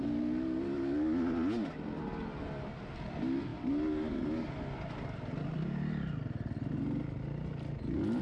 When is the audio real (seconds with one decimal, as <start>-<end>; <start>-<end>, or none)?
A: 0.0-8.2